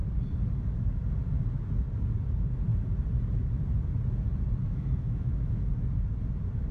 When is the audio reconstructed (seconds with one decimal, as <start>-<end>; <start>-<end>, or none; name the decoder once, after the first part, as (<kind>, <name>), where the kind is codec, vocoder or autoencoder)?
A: 4.6-5.7 (autoencoder, DAC-VAE)